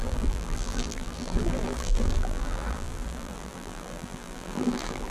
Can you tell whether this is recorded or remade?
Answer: remade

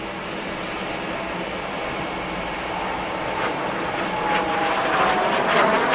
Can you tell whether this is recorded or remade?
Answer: recorded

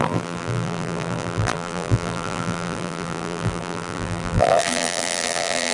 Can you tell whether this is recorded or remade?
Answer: remade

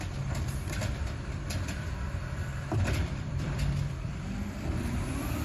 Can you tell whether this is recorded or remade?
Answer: remade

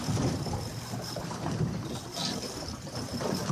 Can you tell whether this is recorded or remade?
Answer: remade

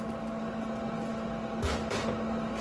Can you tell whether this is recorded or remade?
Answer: recorded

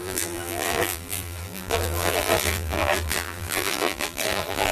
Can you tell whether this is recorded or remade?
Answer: remade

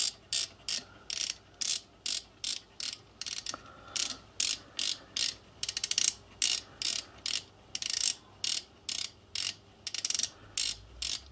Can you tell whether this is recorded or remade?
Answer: recorded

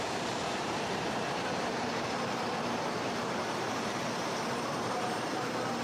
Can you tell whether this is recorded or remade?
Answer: remade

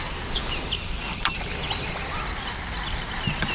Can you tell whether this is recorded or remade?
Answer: recorded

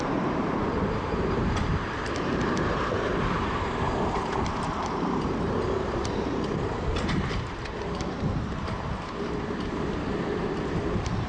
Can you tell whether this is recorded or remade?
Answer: remade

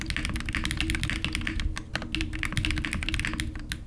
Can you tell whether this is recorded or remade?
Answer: recorded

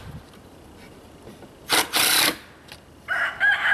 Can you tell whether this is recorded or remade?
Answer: remade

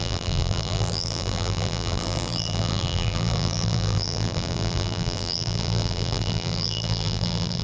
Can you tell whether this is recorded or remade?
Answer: remade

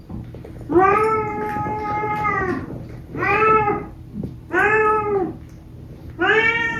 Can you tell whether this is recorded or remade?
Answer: remade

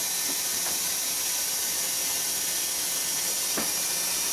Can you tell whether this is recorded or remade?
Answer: recorded